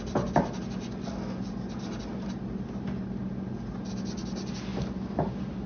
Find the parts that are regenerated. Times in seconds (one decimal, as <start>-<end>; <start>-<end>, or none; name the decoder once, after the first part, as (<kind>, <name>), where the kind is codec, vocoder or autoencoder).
none